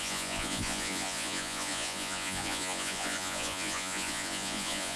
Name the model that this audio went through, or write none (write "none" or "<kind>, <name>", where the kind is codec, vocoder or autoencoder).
vocoder, Vocos